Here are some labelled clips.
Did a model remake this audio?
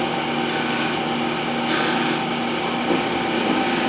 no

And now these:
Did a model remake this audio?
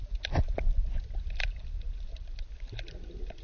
no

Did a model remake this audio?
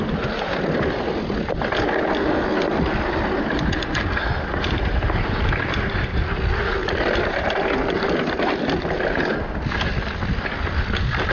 no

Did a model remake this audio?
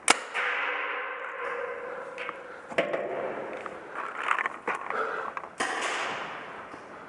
no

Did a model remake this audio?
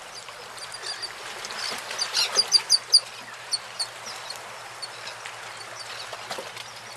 no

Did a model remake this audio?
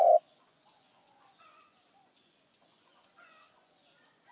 yes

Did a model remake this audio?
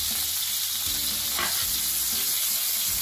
no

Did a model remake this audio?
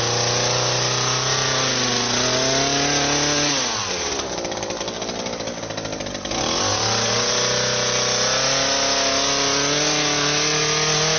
no